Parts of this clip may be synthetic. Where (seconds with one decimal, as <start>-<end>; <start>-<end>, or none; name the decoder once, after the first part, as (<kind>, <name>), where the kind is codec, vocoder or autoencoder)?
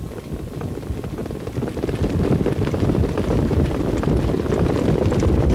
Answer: none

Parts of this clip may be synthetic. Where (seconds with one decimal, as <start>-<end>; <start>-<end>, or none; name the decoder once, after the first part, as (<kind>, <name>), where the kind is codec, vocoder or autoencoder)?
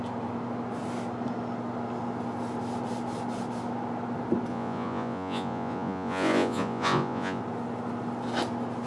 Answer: 4.5-7.4 (vocoder, Vocos)